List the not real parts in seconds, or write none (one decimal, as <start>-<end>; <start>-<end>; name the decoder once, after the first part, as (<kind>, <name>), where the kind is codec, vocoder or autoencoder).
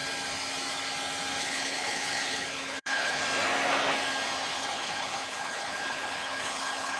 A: 1.4-3.2 (codec, HILCodec); 4.5-7.0